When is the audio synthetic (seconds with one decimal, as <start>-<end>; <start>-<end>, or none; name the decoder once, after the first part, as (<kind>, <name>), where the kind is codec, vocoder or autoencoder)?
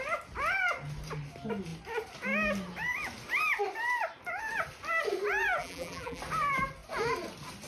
5.6-6.2 (vocoder, BigVGAN v2)